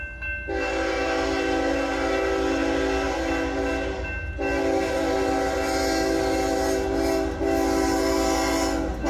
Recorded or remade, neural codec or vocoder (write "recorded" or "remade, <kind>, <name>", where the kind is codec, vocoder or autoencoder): recorded